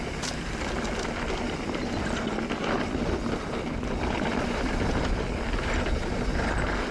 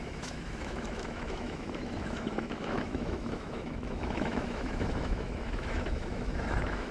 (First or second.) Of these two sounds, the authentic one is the first